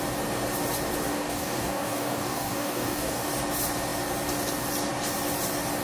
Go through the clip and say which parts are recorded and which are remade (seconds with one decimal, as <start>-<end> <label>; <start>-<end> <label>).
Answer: 0.0-1.1 recorded; 1.1-3.3 remade; 3.3-5.8 recorded